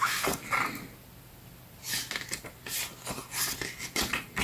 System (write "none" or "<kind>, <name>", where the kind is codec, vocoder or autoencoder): none